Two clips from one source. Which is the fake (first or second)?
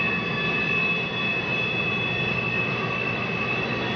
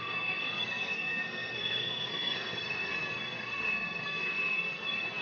second